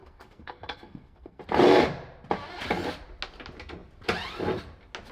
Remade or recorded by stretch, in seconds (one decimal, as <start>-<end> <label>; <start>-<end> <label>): 0.0-1.4 remade; 1.4-5.1 recorded